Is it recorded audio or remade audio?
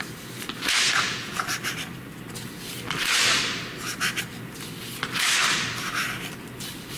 remade